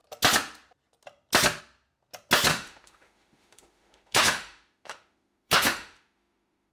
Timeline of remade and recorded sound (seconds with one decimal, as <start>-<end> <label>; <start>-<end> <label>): 0.0-2.5 recorded; 2.5-6.7 remade